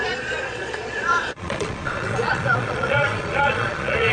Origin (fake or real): fake